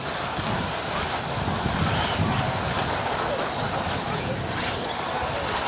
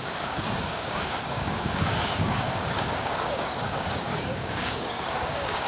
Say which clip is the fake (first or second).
second